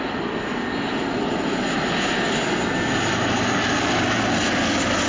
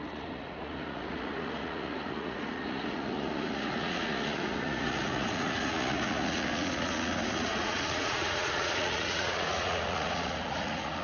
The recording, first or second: first